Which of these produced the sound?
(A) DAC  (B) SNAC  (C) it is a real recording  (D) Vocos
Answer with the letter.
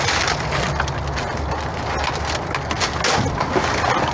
C